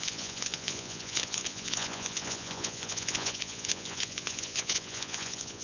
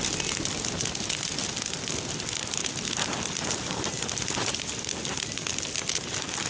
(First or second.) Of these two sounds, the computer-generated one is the first